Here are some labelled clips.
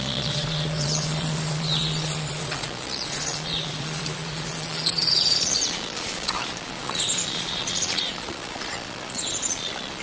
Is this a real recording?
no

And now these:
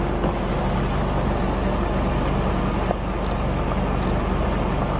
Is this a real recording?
yes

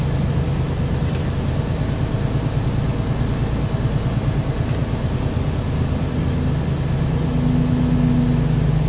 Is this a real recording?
yes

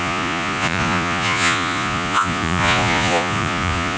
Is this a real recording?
no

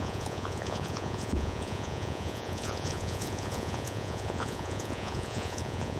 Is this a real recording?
no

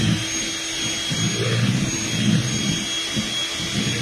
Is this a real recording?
yes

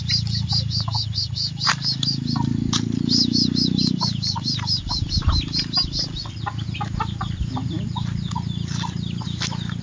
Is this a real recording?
yes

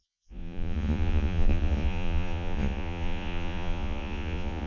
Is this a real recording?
no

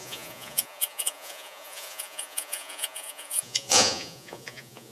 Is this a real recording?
no